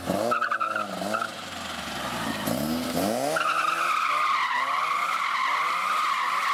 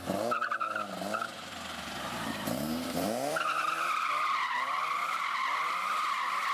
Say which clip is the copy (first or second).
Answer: second